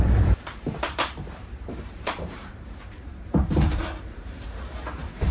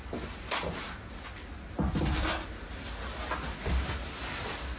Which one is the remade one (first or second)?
first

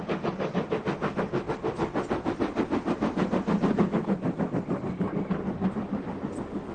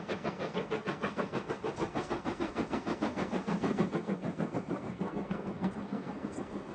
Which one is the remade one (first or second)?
second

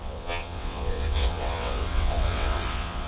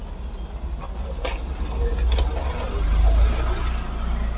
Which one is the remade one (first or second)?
first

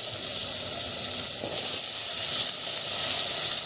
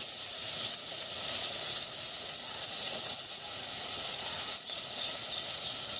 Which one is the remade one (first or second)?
second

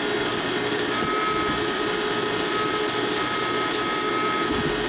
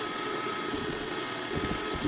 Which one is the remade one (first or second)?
second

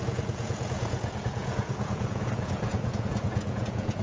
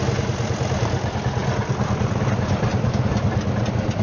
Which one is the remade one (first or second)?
first